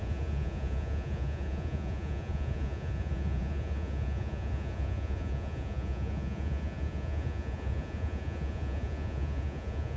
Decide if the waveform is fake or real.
fake